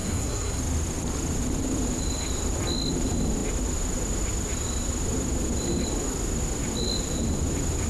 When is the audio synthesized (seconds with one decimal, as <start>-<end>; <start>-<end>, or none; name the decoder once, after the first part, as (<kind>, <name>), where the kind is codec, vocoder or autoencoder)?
0.0-0.6 (codec, SNAC)